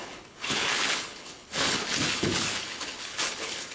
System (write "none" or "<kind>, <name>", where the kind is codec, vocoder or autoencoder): codec, HILCodec